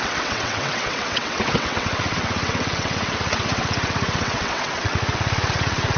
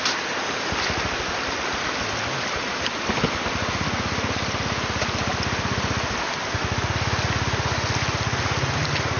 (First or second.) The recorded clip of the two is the second